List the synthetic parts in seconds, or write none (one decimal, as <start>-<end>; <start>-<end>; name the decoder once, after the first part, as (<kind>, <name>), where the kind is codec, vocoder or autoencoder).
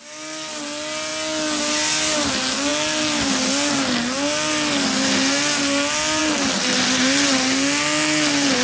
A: none